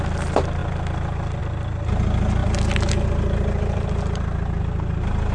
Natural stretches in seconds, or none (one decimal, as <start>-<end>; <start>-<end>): 0.0-2.4; 4.6-5.3